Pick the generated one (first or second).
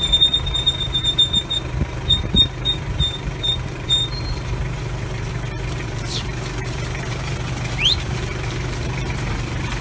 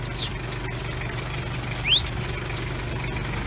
first